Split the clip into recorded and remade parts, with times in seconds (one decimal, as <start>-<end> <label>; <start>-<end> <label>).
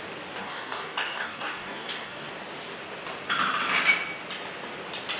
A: 0.0-0.4 recorded; 0.4-2.3 remade; 2.3-5.2 recorded